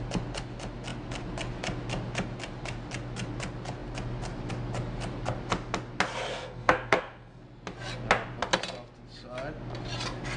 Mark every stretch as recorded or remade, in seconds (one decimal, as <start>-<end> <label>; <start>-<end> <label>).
0.0-6.3 recorded; 6.3-7.4 remade; 7.4-10.4 recorded